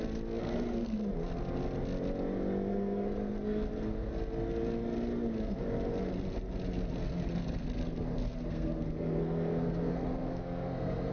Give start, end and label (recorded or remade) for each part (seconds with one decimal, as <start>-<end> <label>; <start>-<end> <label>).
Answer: 0.0-0.4 recorded; 0.4-1.1 remade; 1.1-2.7 recorded; 2.7-4.1 remade; 4.1-7.0 recorded; 7.0-11.1 remade